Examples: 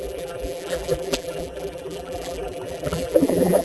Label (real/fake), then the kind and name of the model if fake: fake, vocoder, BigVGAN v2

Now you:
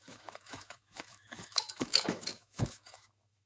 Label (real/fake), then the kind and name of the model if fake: fake, autoencoder, DAC-VAE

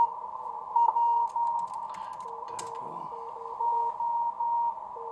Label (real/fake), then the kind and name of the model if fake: real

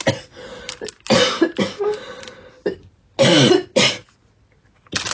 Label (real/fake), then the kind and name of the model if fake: real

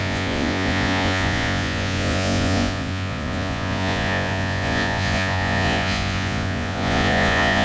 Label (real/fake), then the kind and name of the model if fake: fake, vocoder, Vocos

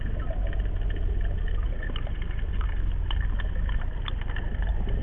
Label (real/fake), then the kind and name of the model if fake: real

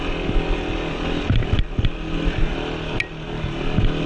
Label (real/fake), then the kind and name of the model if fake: real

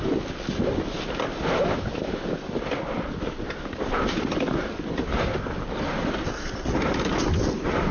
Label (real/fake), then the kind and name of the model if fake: real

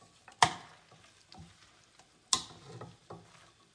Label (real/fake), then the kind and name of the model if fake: real